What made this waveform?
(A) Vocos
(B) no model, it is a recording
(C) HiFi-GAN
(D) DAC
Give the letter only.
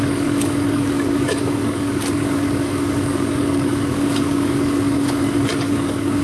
D